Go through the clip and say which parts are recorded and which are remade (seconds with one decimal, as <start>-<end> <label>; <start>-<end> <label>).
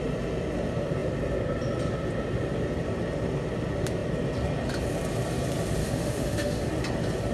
0.0-5.8 recorded; 5.8-6.7 remade; 6.7-7.3 recorded